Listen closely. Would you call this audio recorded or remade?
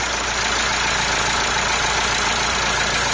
recorded